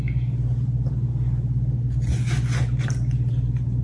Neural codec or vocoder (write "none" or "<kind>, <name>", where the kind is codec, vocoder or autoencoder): none